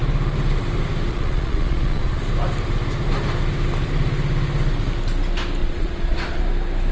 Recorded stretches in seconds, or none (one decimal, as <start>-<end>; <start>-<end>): 0.0-1.1; 2.2-5.6; 6.4-6.9